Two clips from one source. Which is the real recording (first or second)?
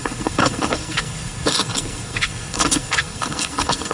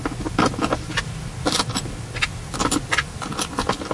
second